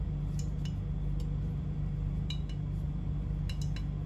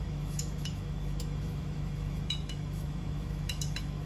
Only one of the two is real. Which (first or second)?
first